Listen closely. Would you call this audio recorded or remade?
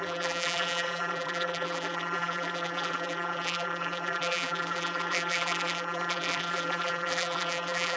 remade